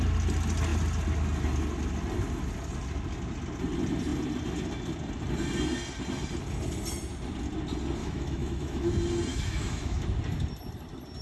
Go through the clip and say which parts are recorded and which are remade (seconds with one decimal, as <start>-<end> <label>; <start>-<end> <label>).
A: 0.0-8.0 recorded; 8.0-8.9 remade; 8.9-9.3 recorded; 9.3-10.0 remade; 10.0-11.2 recorded

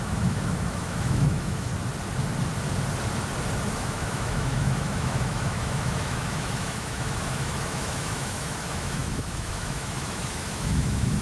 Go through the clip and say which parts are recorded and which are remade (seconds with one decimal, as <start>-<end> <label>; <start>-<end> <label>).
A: 0.0-1.7 remade; 1.7-3.7 recorded; 3.7-11.2 remade

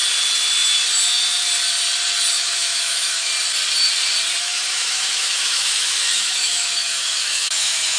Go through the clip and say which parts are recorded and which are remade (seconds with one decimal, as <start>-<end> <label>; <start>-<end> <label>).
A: 0.0-2.3 recorded; 2.3-3.3 remade; 3.3-4.4 recorded; 4.4-8.0 remade

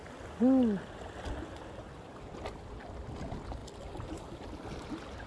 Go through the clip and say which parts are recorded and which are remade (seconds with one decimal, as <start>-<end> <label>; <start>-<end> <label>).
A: 0.0-5.3 recorded

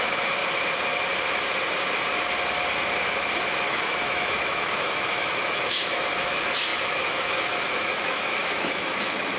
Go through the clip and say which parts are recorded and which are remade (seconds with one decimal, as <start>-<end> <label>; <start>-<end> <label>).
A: 0.0-0.4 remade; 0.4-3.7 recorded; 3.7-9.4 remade

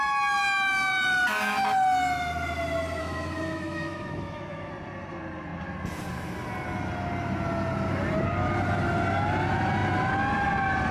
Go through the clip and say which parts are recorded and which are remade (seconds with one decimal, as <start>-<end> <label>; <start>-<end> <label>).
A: 0.0-3.0 recorded; 3.0-4.7 remade; 4.7-10.9 recorded

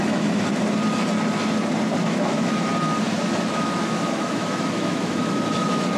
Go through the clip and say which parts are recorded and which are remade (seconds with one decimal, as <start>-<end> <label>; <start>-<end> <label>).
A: 0.0-0.5 remade; 0.5-2.0 recorded; 2.0-2.7 remade; 2.7-3.5 recorded; 3.5-6.0 remade

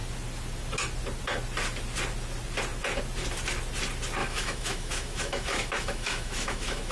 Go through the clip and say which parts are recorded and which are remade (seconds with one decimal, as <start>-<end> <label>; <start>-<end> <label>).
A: 0.0-4.2 recorded; 4.2-6.9 remade